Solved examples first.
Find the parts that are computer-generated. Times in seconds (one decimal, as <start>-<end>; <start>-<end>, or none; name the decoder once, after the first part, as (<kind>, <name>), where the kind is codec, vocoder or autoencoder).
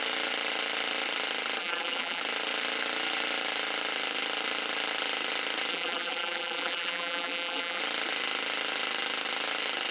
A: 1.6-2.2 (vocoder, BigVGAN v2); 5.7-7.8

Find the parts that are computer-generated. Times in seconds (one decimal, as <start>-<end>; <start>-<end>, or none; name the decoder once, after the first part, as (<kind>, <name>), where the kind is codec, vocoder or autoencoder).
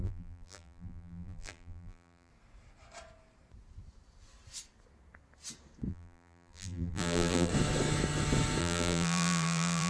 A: 0.0-2.3 (vocoder, BigVGAN v2); 5.9-7.5; 8.6-9.9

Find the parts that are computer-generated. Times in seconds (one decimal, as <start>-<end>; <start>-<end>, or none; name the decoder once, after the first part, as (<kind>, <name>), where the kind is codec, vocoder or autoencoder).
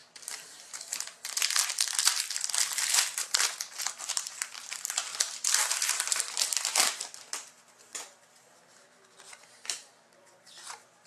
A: 3.9-11.1 (vocoder, BigVGAN v2)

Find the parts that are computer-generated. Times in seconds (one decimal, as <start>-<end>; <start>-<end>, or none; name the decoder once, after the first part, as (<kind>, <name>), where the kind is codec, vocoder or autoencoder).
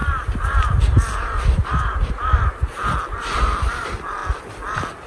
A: 0.0-4.2 (vocoder, BigVGAN v2)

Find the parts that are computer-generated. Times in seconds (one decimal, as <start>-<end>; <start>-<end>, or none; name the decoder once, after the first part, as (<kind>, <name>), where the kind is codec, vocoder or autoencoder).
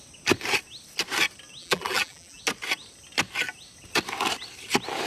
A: 1.6-2.4 (vocoder, BigVGAN v2)